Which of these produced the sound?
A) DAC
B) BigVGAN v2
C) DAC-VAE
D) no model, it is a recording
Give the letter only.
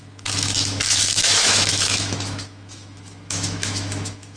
C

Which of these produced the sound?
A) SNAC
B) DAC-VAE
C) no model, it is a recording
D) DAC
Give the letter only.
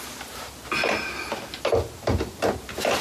C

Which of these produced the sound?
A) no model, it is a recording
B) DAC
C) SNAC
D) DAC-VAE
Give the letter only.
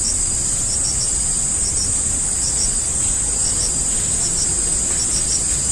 A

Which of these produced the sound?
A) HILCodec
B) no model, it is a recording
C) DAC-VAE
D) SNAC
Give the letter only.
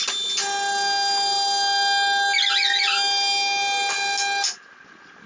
B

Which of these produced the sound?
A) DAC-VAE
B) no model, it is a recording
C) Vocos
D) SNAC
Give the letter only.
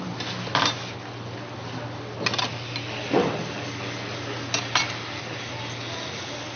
B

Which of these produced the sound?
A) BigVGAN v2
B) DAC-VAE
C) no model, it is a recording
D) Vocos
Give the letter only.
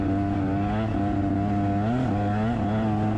C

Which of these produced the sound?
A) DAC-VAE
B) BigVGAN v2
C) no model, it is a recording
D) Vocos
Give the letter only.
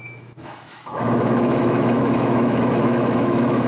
A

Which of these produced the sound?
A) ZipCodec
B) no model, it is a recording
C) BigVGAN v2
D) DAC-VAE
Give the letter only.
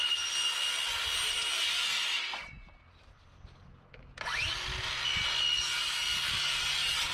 B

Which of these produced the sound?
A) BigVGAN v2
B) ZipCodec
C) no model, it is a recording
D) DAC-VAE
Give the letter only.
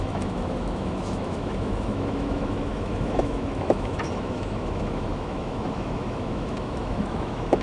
D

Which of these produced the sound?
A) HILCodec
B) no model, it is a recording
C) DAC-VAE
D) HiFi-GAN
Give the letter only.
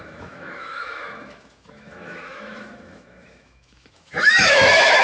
C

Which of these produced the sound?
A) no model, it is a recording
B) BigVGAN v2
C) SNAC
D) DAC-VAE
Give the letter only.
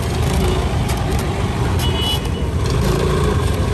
A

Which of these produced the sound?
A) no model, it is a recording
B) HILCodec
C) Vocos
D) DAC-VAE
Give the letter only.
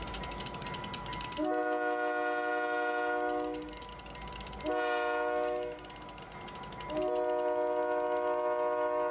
A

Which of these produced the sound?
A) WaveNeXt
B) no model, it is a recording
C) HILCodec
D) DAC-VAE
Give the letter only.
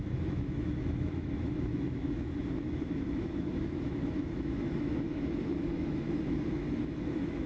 D